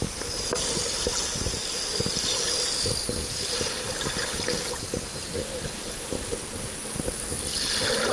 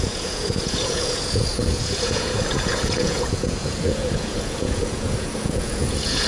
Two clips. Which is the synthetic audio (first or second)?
second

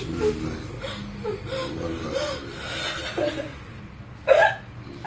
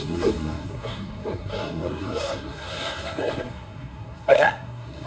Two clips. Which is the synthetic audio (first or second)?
second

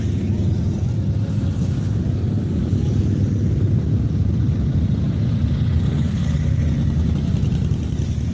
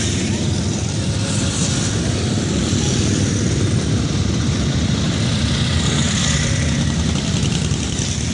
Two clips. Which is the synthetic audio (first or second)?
second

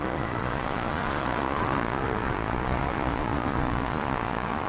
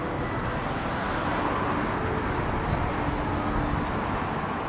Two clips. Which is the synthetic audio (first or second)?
first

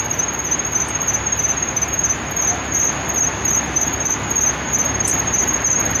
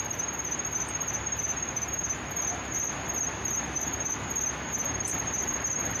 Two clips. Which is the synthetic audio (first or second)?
second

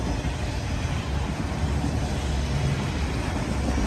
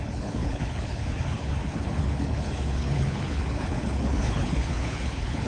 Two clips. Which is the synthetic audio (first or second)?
second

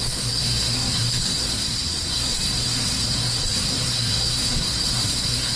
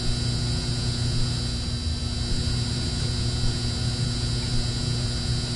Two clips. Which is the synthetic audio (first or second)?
first